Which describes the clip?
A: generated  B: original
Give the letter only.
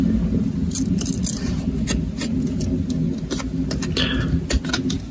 B